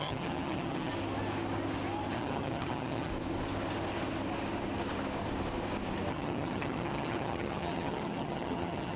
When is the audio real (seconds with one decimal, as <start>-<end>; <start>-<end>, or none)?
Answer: 0.9-2.1; 3.1-6.1